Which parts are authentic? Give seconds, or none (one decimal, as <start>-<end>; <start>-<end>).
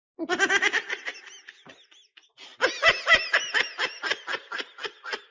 0.0-5.3